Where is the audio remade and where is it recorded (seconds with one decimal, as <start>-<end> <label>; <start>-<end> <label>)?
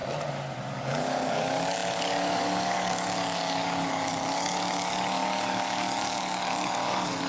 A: 0.0-0.7 recorded; 0.7-7.3 remade